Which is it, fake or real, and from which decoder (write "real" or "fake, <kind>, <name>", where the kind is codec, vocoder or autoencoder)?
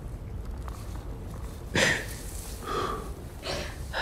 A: real